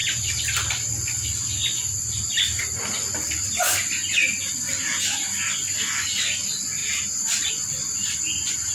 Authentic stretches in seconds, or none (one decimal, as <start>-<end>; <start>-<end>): 0.0-8.7